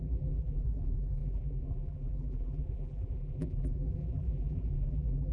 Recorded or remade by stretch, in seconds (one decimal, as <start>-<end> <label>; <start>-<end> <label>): 0.0-5.3 remade